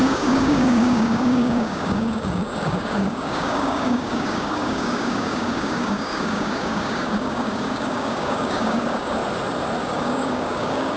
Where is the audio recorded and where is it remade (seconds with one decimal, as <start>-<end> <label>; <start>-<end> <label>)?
0.0-9.2 remade; 9.2-9.8 recorded; 9.8-11.0 remade